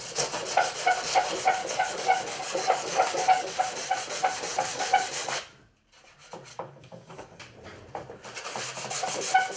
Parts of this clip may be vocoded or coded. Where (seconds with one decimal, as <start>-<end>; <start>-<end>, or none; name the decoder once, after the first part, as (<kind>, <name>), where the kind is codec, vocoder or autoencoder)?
1.6-3.6 (codec, DAC); 4.7-5.4; 6.5-7.4

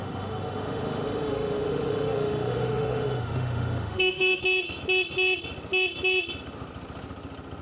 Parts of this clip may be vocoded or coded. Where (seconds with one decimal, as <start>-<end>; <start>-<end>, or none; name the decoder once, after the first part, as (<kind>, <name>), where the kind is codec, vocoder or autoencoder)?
0.0-4.4 (autoencoder, DAC-VAE)